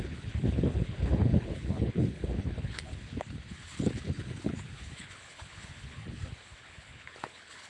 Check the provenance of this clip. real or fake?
fake